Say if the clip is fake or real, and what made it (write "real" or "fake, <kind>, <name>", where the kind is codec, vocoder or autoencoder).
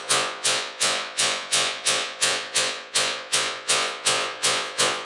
fake, vocoder, Vocos